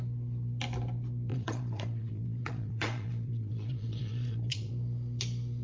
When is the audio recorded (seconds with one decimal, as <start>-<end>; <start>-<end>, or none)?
0.0-1.3; 4.7-5.6